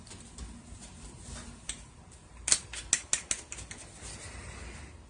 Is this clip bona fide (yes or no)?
yes